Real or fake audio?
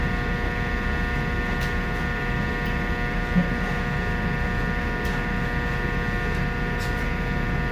real